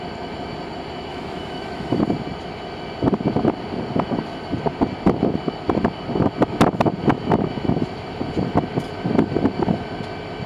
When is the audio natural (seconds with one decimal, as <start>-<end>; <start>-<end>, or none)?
0.0-1.1; 2.0-10.5